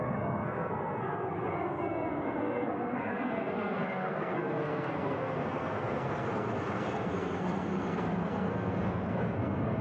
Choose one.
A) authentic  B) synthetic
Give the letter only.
B